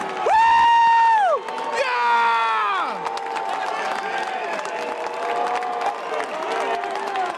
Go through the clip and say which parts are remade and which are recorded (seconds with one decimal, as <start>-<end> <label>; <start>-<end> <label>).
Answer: 0.0-7.4 recorded